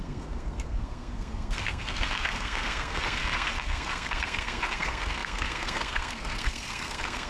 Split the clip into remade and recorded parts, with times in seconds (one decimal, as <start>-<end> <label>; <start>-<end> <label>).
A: 0.0-7.3 remade